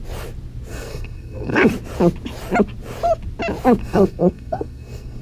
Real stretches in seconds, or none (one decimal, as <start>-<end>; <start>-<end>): 0.0-0.7; 1.7-3.8